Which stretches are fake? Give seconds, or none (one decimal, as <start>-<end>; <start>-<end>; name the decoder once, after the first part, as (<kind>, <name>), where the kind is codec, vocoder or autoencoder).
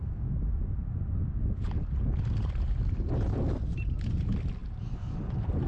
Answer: none